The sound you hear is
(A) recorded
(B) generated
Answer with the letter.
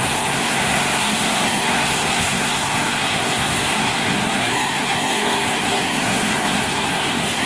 B